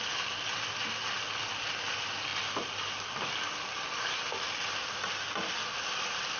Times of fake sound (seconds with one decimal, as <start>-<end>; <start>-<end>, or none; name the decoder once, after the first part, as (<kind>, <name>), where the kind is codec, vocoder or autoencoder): none